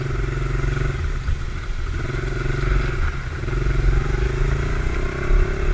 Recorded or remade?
recorded